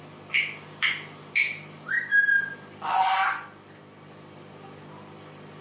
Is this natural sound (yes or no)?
yes